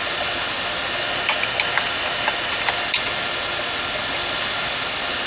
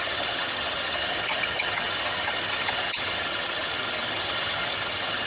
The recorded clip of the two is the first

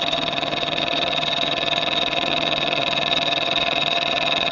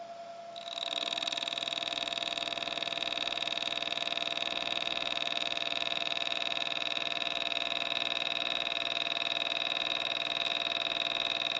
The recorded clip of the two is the second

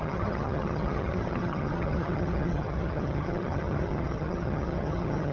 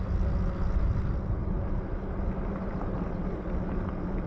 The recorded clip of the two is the second